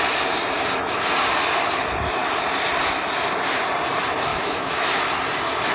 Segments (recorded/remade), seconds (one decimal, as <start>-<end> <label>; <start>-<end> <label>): 0.0-4.3 recorded; 4.3-5.0 remade; 5.0-5.7 recorded